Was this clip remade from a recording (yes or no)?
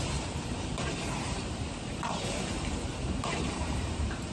yes